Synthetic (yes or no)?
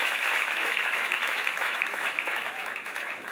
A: yes